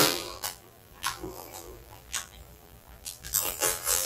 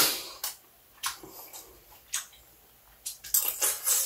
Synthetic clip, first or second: first